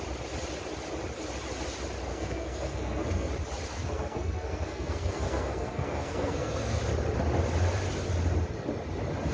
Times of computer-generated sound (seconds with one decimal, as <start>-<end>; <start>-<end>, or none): 2.1-3.3; 3.7-6.8